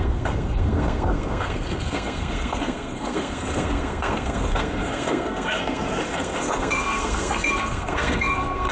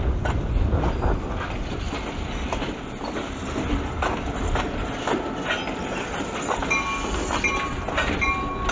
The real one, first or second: second